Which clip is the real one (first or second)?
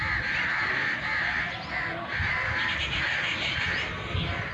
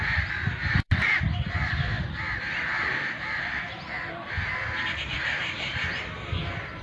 first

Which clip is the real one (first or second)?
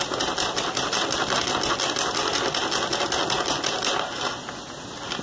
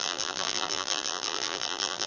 first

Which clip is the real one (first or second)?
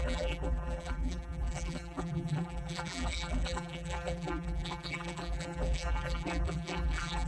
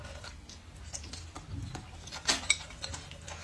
second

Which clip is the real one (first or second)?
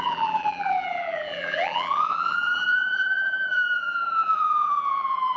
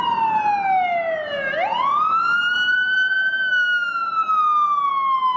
second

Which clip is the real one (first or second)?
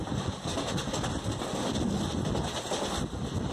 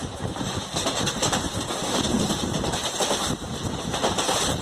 first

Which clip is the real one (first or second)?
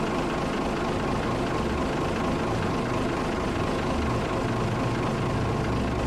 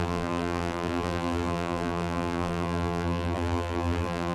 first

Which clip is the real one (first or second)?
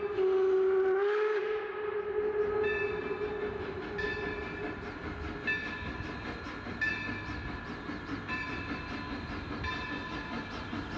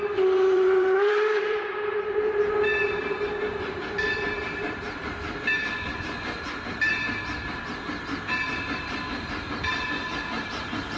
first